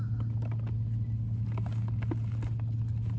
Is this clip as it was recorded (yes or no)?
yes